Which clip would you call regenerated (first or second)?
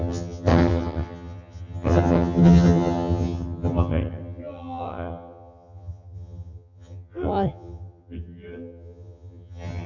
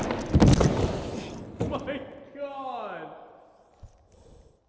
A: first